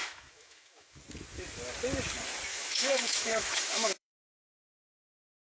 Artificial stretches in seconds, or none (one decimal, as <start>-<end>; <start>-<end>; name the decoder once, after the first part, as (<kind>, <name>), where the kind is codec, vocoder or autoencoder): 0.0-1.0 (autoencoder, DAC-VAE); 2.5-5.0